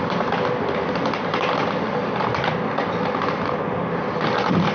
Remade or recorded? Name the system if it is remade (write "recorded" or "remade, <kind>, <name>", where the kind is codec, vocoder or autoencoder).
recorded